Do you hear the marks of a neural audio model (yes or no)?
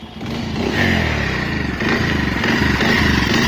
no